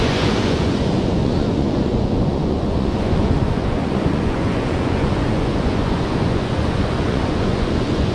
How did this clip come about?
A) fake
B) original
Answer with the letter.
A